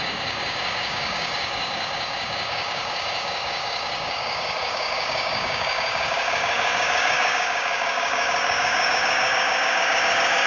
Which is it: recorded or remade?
remade